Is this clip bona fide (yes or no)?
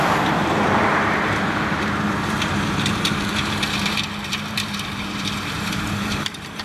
no